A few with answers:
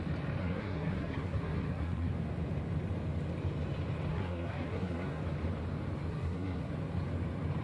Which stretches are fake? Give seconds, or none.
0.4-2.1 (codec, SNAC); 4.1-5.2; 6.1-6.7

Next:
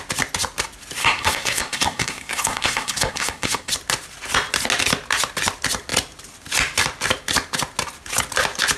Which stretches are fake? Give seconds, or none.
1.0-3.7 (codec, SNAC)